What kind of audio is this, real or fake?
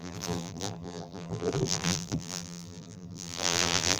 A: fake